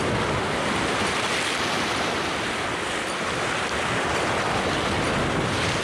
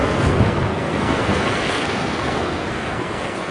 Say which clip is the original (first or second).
first